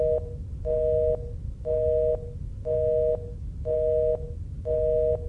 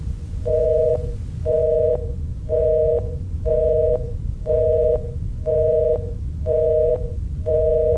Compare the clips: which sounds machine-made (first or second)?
second